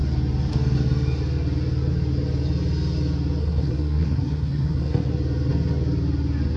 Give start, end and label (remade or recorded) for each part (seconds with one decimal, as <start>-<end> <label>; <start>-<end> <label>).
0.0-3.4 recorded; 3.4-5.1 remade; 5.1-6.6 recorded